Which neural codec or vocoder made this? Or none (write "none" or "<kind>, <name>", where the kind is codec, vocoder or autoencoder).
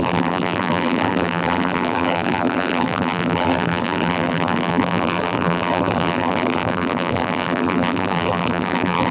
vocoder, BigVGAN v2